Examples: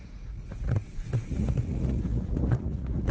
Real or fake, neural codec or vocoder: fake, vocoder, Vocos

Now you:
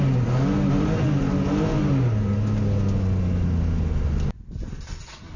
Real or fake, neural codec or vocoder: real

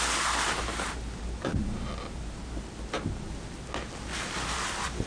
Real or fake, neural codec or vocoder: real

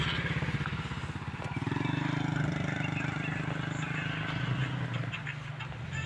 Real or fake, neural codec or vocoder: real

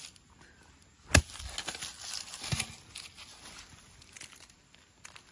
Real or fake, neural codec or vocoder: real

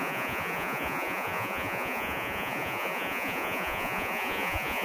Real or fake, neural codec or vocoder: fake, vocoder, Vocos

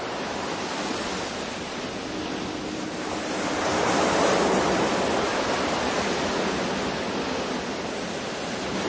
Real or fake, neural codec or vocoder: real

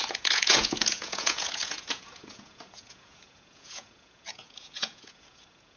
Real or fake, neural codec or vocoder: fake, vocoder, Vocos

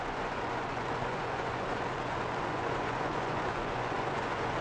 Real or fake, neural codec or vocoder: fake, vocoder, Vocos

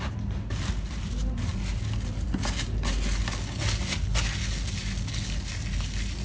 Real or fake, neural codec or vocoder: real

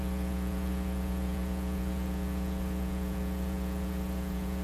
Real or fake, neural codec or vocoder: fake, vocoder, Vocos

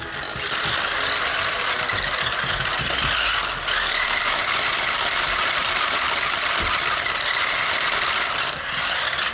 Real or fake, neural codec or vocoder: real